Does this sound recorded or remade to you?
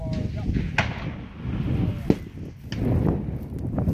recorded